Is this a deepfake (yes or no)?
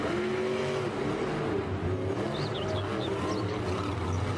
no